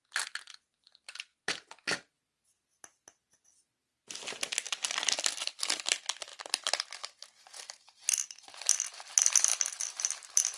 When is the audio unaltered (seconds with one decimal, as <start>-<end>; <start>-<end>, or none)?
0.0-9.5